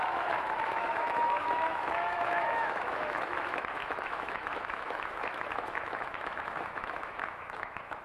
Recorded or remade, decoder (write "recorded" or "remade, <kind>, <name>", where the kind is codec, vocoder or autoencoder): remade, autoencoder, DAC-VAE